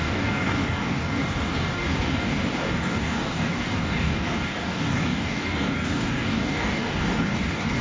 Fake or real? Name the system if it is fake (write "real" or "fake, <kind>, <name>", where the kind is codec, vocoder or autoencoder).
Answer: fake, codec, DAC